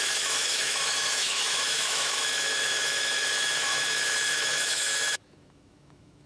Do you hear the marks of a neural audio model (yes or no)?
yes